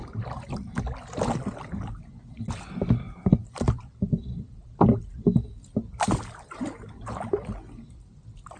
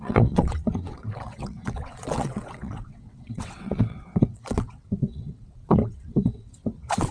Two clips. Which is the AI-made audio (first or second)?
second